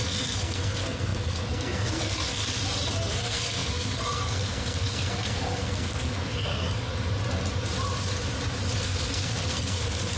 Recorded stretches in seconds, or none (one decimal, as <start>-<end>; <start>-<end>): 2.4-3.1; 6.9-8.8